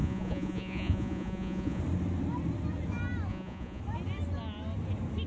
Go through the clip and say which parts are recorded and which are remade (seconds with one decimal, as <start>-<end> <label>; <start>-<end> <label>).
0.0-1.8 remade; 1.8-3.3 recorded; 3.3-3.8 remade; 3.8-5.3 recorded